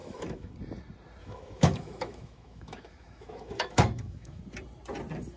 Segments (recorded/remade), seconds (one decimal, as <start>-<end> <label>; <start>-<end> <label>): 0.0-0.5 remade; 0.5-1.2 recorded; 1.2-4.4 remade; 4.4-5.4 recorded